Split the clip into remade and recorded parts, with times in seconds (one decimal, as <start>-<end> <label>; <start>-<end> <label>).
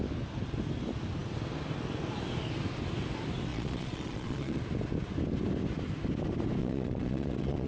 0.0-3.5 recorded; 3.5-4.6 remade; 4.6-6.6 recorded; 6.6-7.7 remade